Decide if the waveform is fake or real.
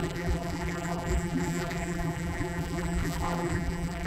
fake